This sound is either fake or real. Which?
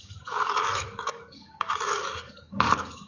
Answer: fake